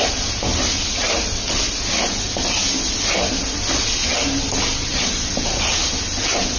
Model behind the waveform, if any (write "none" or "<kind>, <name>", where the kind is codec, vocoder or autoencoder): none